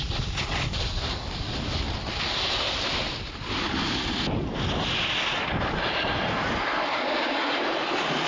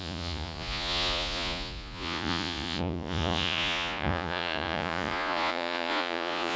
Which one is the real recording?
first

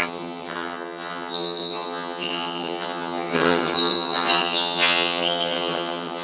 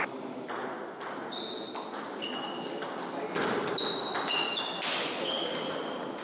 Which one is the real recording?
second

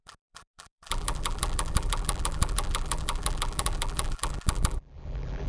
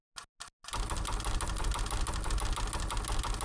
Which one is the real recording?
second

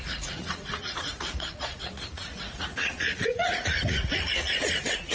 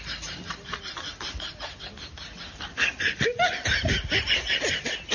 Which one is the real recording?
second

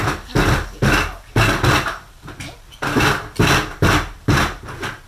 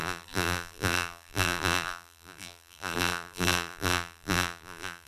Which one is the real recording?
first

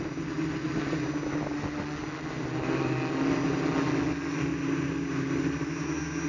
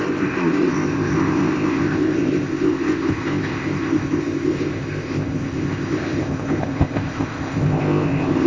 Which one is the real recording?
first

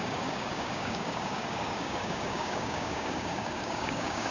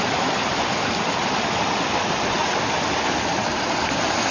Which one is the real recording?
second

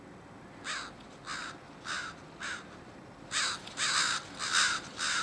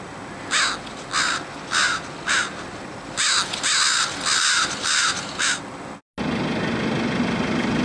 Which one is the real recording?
second